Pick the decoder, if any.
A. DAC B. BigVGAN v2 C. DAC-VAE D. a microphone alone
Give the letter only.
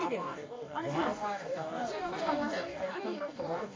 A